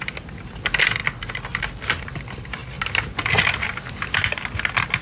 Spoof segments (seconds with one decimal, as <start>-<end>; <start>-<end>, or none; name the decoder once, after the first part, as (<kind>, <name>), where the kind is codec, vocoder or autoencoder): none

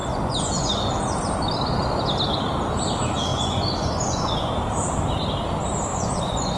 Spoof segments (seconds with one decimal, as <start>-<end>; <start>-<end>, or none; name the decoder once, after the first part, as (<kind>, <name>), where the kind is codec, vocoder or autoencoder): 0.0-0.9 (vocoder, Vocos); 3.3-4.5; 5.9-6.6

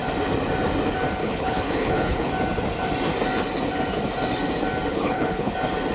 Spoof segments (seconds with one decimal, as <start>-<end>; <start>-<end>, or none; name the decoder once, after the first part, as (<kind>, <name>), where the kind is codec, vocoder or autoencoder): 1.2-2.3 (codec, HILCodec); 4.9-5.5

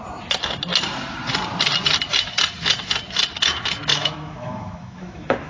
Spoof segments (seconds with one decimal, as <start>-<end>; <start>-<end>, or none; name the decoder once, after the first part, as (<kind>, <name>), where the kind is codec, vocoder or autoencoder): 3.9-5.5 (autoencoder, DAC-VAE)

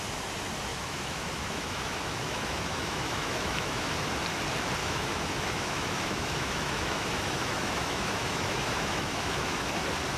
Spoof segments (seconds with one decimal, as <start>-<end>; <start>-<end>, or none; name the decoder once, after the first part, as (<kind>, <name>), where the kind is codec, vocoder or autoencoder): 0.7-3.9 (autoencoder, DAC-VAE); 4.8-9.6

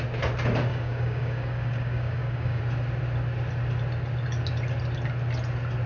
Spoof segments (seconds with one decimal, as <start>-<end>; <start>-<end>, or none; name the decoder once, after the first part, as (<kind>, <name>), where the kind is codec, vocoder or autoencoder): 0.7-2.6 (codec, DAC)